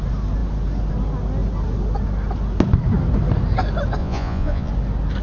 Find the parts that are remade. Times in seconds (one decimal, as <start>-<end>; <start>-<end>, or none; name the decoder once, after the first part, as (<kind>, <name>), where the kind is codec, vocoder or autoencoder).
4.0-4.7 (vocoder, Vocos)